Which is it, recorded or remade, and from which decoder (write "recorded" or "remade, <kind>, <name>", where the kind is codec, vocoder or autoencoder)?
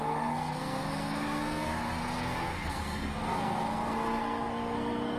remade, codec, SNAC